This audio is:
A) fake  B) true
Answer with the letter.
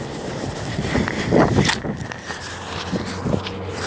B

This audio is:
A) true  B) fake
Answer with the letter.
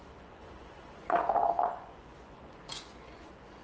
B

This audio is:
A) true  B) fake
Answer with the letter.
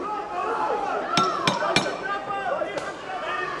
A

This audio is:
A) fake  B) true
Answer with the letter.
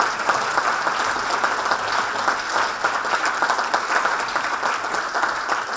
B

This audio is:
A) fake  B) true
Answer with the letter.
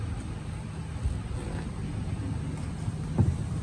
B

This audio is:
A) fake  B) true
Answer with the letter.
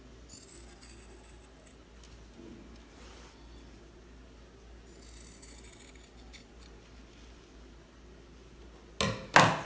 B